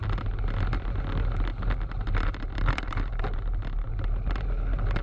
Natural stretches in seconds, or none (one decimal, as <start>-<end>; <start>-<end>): 0.0-5.0